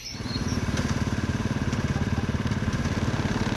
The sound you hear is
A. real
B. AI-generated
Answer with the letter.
B